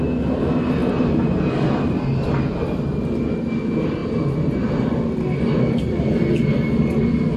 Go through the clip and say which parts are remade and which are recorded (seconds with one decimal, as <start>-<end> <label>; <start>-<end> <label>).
0.0-7.4 recorded